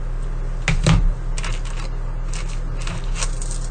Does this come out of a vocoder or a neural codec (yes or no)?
no